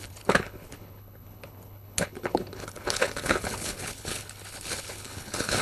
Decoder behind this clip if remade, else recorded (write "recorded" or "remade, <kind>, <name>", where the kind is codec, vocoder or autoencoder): remade, codec, HILCodec